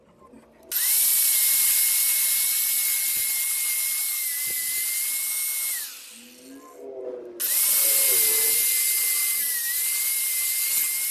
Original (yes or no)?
yes